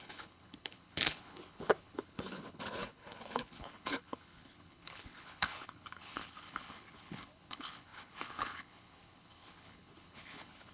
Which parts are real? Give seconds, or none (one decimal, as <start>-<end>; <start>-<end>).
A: none